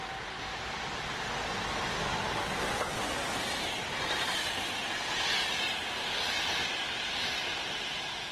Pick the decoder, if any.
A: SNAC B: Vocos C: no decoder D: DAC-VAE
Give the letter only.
C